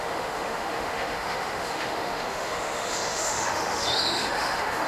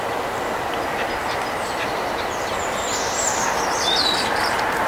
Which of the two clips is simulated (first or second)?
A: first